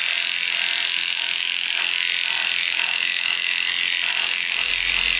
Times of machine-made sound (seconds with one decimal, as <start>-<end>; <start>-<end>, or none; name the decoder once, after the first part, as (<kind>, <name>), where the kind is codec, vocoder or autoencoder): 1.0-1.8 (autoencoder, DAC-VAE); 2.6-3.6; 4.1-4.7